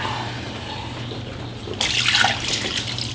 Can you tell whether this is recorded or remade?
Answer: recorded